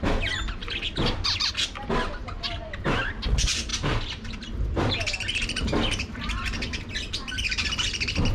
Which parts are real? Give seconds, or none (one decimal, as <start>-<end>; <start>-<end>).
0.0-0.6; 1.5-3.7; 6.2-8.3